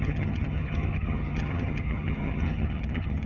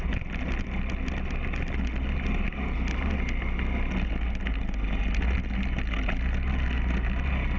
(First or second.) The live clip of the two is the second